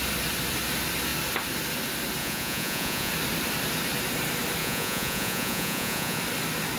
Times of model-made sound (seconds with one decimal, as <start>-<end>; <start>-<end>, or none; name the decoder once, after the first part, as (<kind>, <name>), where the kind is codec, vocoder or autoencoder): 2.2-3.1 (vocoder, Vocos); 4.6-6.2